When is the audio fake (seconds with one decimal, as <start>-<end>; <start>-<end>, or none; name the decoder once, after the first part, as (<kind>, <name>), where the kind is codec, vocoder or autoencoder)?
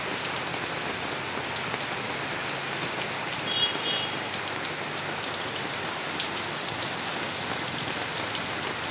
none